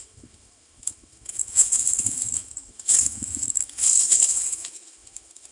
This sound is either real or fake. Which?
fake